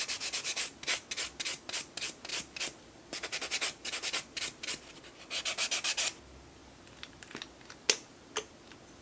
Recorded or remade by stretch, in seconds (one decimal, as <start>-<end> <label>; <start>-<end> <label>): 0.0-2.3 recorded; 2.3-5.0 remade; 5.0-6.6 recorded; 6.6-7.2 remade; 7.2-9.0 recorded